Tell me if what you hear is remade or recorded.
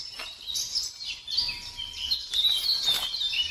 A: recorded